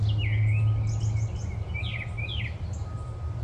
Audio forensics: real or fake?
real